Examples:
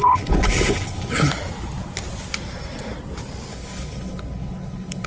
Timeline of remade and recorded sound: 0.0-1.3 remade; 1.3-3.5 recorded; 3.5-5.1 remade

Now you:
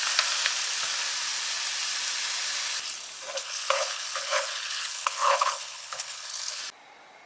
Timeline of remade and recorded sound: 0.0-3.4 recorded; 3.4-6.6 remade; 6.6-7.3 recorded